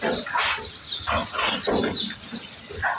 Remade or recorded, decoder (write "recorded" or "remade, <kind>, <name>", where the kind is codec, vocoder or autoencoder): recorded